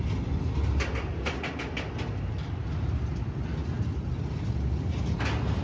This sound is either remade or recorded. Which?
recorded